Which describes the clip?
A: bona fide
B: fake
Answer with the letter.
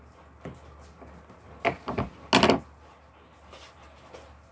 A